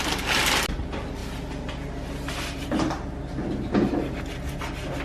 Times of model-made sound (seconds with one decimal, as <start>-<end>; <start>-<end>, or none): none